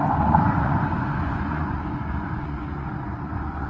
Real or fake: fake